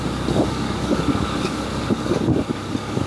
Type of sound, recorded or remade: remade